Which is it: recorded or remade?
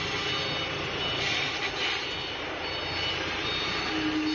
recorded